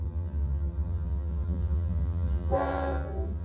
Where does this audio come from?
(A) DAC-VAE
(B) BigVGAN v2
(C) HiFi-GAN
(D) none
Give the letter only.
B